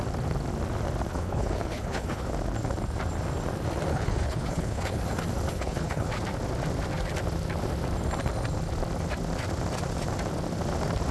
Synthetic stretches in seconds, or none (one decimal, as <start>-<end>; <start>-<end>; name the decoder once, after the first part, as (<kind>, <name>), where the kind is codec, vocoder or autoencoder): 1.1-2.3 (codec, HILCodec); 3.9-5.0; 5.5-6.1